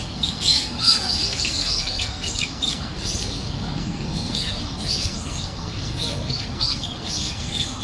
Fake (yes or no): yes